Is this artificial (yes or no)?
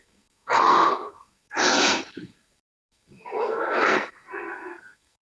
yes